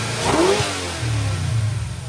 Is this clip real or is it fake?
real